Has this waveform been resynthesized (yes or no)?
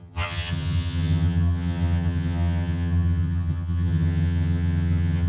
yes